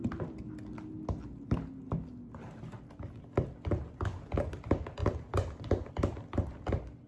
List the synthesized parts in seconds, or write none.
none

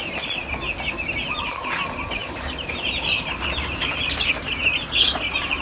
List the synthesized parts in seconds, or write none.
2.2-4.3 (vocoder, BigVGAN v2)

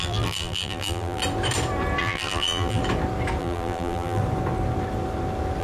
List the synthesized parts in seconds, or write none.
0.0-1.2 (vocoder, BigVGAN v2); 2.0-2.8; 3.4-4.2

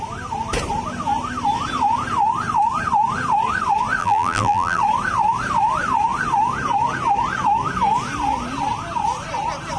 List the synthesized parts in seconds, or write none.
4.0-4.8 (vocoder, BigVGAN v2)

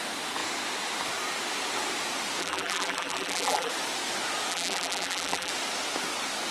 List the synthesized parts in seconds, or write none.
2.4-3.7 (vocoder, BigVGAN v2); 4.5-5.5

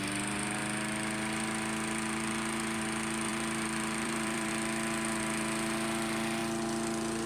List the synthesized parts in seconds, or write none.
3.3-4.5 (vocoder, BigVGAN v2)

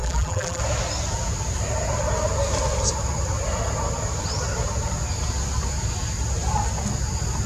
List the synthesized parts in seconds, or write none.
0.0-0.6 (vocoder, BigVGAN v2)

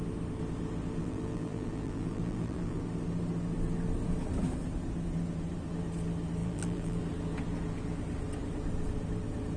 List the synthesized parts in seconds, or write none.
1.0-2.8 (vocoder, BigVGAN v2); 6.4-7.0